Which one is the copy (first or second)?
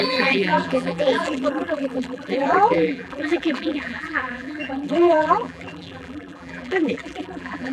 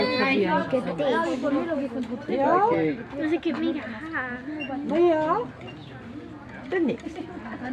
first